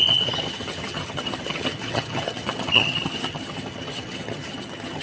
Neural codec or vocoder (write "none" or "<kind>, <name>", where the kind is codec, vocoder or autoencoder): vocoder, HiFi-GAN